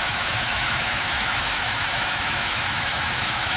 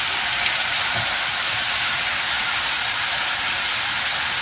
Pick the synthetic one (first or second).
first